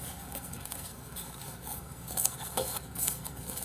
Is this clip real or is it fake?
fake